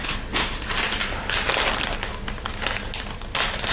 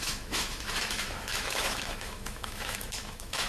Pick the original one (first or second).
first